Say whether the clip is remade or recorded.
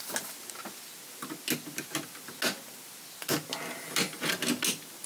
recorded